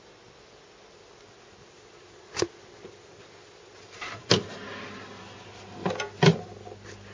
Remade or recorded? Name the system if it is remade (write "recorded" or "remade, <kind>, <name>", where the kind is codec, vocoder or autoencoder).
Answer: recorded